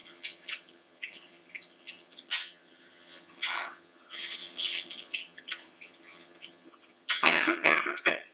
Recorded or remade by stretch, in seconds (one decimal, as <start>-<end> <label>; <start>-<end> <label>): 0.0-8.3 remade